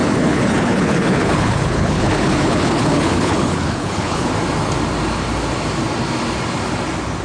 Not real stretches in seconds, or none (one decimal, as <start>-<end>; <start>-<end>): 0.0-4.3